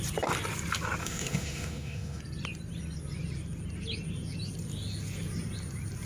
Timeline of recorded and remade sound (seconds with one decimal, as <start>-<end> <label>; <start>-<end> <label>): 0.0-1.0 recorded; 1.0-2.2 remade; 2.2-6.1 recorded